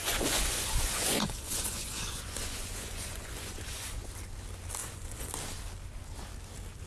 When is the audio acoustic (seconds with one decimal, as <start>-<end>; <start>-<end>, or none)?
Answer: 4.1-4.8; 5.3-6.9